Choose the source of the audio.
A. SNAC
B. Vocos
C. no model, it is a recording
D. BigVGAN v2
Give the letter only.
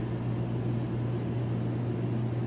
C